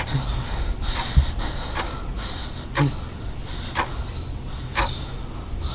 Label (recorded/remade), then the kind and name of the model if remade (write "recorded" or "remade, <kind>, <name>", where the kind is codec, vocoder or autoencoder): recorded